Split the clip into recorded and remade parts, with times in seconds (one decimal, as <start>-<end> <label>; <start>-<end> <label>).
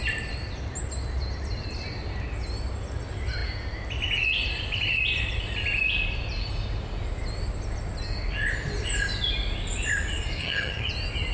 0.0-10.4 recorded; 10.4-10.9 remade; 10.9-11.3 recorded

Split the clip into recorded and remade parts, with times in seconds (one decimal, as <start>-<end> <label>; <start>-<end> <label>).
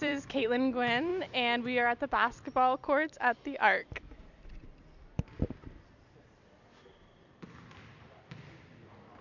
0.0-1.1 remade; 1.1-5.1 recorded; 5.1-9.2 remade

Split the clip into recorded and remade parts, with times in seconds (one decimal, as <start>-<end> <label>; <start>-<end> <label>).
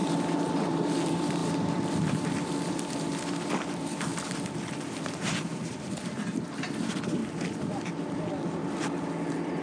0.0-1.4 remade; 1.4-2.0 recorded; 2.0-4.1 remade; 4.1-4.7 recorded; 4.7-7.2 remade; 7.2-8.0 recorded; 8.0-9.6 remade